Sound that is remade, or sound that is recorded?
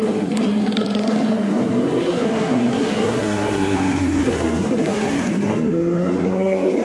remade